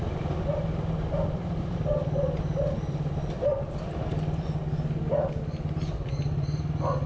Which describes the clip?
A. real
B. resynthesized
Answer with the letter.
A